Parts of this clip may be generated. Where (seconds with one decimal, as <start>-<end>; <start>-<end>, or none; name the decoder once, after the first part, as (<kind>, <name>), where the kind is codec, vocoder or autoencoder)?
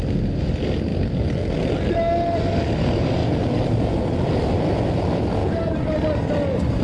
none